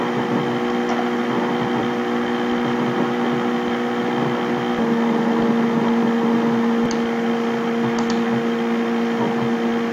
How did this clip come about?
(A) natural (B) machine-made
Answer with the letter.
A